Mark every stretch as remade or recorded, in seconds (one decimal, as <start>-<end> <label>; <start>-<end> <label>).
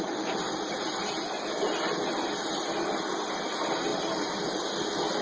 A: 0.0-3.9 recorded; 3.9-4.5 remade; 4.5-5.2 recorded